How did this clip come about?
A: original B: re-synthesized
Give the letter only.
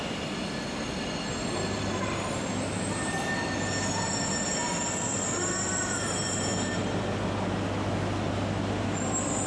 A